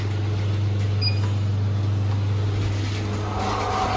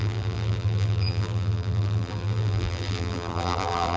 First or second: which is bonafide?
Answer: first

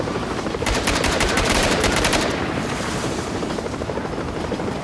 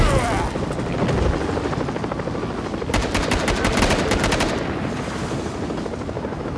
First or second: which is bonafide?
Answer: second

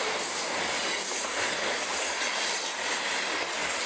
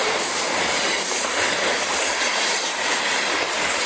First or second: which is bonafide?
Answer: first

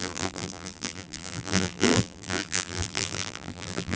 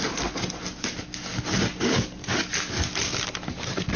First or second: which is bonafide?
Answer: second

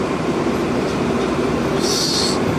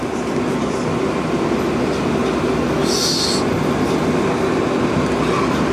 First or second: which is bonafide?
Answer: second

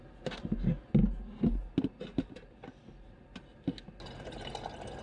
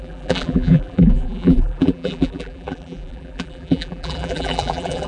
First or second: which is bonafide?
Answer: first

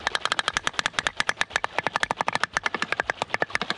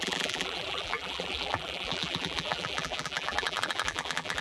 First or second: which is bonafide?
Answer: first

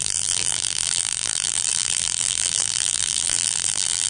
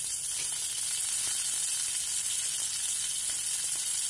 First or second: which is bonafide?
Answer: second